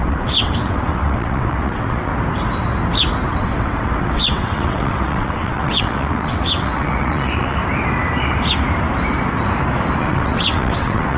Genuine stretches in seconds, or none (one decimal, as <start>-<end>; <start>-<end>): 2.1-3.3; 7.6-10.0